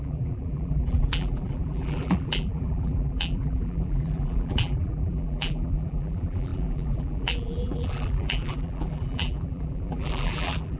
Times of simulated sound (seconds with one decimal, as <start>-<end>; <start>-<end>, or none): 0.0-10.8